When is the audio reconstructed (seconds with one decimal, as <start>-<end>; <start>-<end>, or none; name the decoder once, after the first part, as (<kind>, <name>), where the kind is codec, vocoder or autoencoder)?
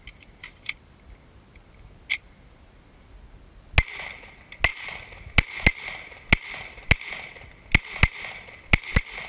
none